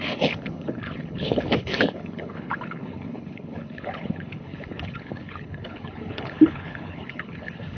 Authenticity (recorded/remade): remade